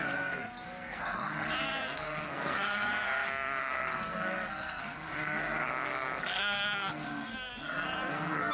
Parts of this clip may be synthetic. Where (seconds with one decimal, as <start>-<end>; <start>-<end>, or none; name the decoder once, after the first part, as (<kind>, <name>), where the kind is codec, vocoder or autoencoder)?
0.0-2.9 (codec, SNAC); 3.6-8.5